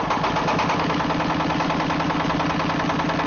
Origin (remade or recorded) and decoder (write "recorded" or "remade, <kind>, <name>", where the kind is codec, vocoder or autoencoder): recorded